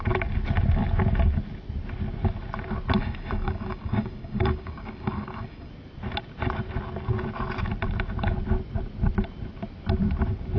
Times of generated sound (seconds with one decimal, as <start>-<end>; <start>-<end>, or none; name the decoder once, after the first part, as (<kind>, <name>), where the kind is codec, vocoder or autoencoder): 3.0-5.7 (codec, DAC)